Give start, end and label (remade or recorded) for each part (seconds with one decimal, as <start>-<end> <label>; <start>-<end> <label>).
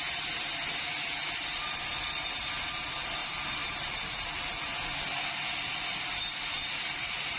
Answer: 0.0-3.2 recorded; 3.2-4.4 remade; 4.4-6.6 recorded; 6.6-7.4 remade